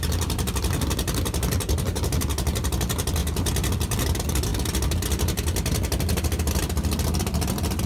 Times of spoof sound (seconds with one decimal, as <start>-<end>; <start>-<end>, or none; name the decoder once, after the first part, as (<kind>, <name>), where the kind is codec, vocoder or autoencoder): 0.0-3.2 (vocoder, BigVGAN v2); 3.7-4.5; 7.2-7.9